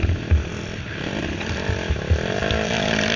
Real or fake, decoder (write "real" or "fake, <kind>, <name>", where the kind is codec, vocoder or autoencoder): real